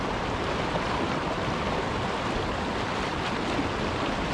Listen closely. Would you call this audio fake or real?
real